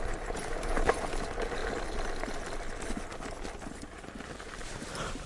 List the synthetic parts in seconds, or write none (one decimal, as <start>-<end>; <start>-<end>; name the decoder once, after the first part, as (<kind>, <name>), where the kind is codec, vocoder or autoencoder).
0.0-1.6 (vocoder, BigVGAN v2); 3.9-5.3